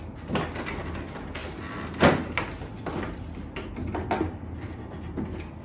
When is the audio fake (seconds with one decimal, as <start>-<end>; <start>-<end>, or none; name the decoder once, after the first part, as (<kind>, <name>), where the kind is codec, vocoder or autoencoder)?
none

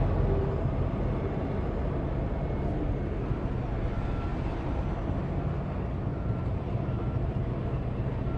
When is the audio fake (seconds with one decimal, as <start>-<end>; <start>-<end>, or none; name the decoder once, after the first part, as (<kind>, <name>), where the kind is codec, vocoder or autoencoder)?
4.3-5.0 (vocoder, BigVGAN v2); 6.1-7.6